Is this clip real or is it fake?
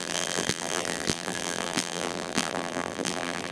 fake